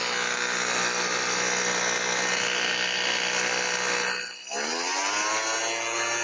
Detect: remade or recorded recorded